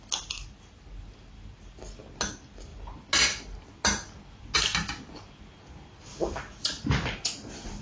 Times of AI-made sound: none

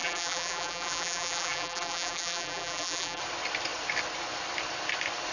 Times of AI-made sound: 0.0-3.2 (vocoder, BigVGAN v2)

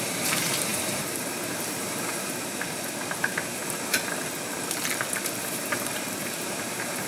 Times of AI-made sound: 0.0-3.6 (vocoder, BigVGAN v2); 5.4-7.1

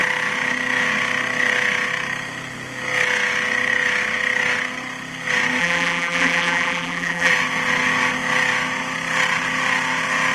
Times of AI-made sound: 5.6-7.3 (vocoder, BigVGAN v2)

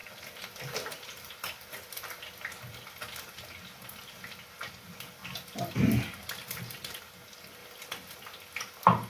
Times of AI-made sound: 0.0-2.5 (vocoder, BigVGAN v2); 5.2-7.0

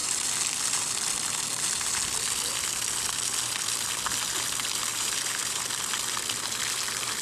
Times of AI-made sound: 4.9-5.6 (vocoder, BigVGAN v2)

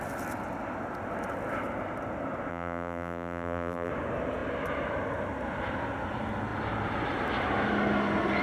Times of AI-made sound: 2.5-3.9 (vocoder, BigVGAN v2)